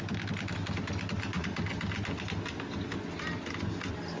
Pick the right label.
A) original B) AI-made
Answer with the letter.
A